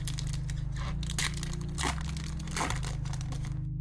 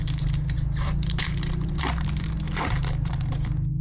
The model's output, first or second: second